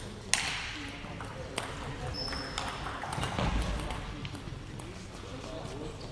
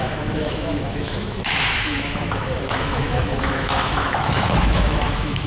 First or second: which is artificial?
second